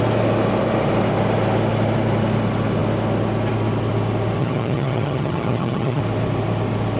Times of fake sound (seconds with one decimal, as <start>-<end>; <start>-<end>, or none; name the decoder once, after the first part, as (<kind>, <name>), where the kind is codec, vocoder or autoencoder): 4.4-6.0 (vocoder, HiFi-GAN)